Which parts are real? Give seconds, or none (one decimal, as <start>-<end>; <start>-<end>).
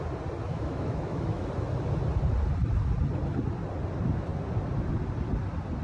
0.0-0.5; 1.5-5.8